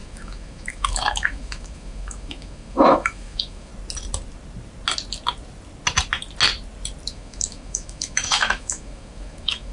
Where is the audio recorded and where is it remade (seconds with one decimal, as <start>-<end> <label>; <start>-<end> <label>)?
0.0-3.7 remade; 3.7-7.1 recorded; 7.1-9.7 remade